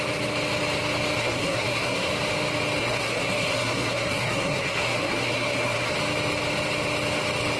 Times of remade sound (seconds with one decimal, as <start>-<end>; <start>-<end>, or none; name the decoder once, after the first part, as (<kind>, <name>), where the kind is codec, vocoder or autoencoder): 1.2-2.1 (codec, SNAC); 2.8-5.9